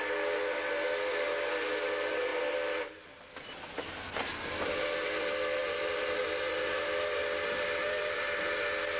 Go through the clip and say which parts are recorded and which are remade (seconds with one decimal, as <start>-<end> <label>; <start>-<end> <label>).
0.0-9.0 recorded